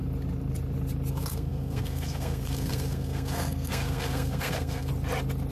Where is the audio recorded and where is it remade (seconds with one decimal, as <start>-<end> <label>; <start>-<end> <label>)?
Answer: 0.0-1.1 recorded; 1.1-4.9 remade; 4.9-5.5 recorded